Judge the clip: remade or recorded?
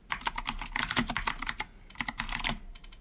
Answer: recorded